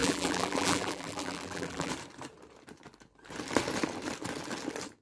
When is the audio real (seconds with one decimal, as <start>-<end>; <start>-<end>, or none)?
1.9-5.0